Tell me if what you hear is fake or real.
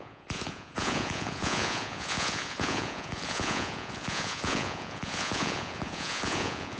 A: fake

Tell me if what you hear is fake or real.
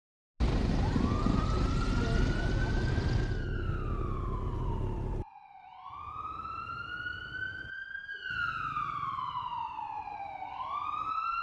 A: real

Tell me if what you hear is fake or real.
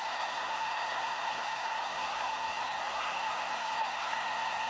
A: fake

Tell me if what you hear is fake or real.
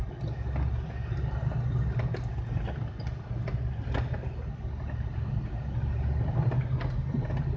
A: real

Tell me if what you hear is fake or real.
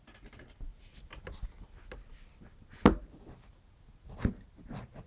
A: real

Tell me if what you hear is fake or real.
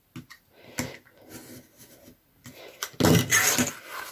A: real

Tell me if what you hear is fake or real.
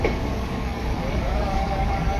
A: fake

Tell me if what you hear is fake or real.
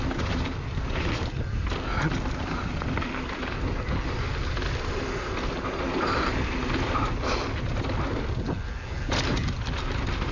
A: real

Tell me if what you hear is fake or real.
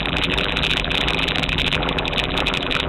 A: fake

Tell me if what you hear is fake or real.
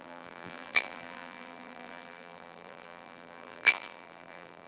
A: fake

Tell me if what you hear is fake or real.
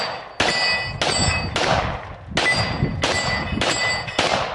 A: real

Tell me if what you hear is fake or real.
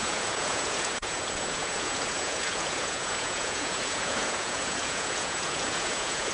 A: fake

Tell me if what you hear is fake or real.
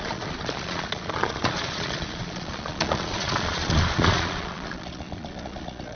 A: fake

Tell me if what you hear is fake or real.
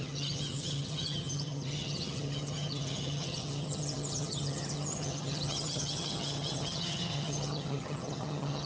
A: fake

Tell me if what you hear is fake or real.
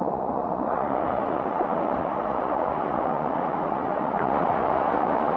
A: fake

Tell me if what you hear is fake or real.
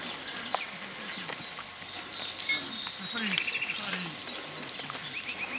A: real